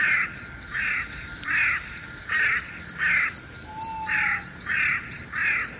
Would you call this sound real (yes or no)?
yes